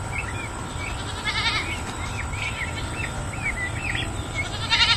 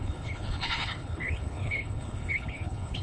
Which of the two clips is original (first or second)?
first